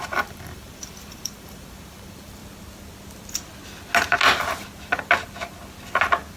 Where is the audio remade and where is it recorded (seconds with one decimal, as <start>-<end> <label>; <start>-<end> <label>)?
0.0-2.4 remade; 2.4-6.4 recorded